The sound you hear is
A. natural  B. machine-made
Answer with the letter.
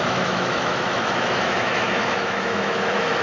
B